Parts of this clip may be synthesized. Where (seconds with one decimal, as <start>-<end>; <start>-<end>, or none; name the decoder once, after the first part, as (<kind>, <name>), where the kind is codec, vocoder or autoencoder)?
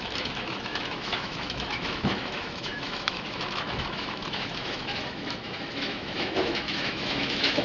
0.0-7.6 (autoencoder, DAC-VAE)